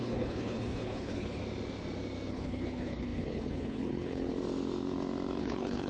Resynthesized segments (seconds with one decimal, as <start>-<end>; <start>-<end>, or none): 0.0-1.4; 2.3-4.3; 5.4-5.9